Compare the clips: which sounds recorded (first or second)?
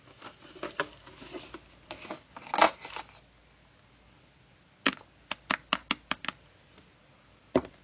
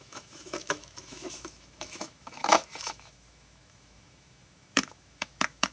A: first